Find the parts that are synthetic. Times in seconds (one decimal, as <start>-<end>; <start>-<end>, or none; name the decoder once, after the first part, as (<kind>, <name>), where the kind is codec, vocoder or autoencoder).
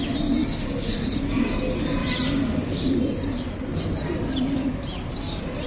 2.0-5.7 (vocoder, BigVGAN v2)